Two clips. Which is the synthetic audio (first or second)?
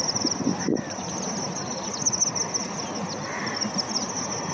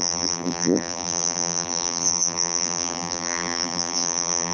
second